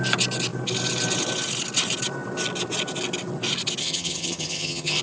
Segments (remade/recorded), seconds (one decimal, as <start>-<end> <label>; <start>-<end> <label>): 0.0-3.8 recorded; 3.8-5.0 remade